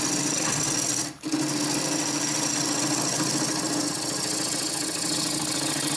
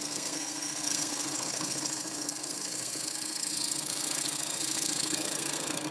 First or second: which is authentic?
first